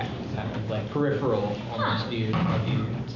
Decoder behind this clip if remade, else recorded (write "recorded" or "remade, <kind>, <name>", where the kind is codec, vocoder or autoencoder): recorded